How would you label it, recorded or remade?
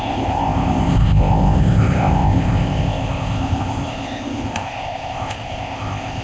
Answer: remade